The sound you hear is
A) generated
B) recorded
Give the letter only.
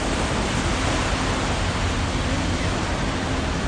B